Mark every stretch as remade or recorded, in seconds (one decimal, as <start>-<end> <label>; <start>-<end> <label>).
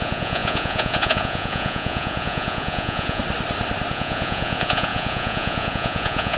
0.0-3.2 remade; 3.2-3.9 recorded; 3.9-6.4 remade